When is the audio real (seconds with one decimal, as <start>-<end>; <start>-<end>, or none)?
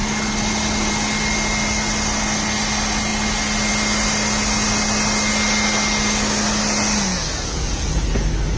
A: 0.0-7.1; 8.0-8.6